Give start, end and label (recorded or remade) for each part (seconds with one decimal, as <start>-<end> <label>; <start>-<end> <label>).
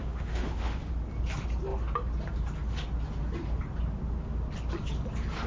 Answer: 0.0-0.9 remade; 0.9-5.5 recorded